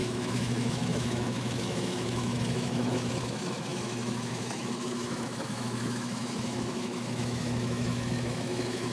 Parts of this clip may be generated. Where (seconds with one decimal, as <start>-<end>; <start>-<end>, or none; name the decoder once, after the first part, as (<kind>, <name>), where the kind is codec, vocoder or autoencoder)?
0.0-8.9 (autoencoder, DAC-VAE)